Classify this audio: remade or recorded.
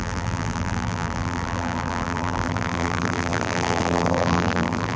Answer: remade